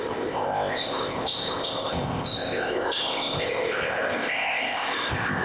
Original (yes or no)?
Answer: no